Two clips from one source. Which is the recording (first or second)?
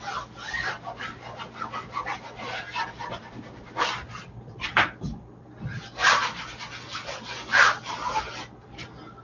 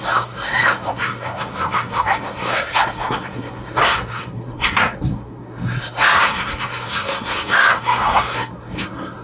first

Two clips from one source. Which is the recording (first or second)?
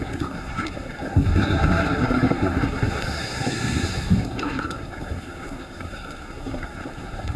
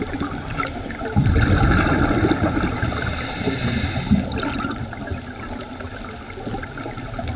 second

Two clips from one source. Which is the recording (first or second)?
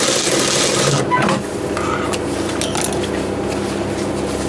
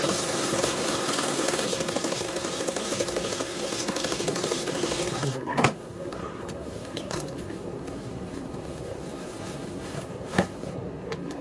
first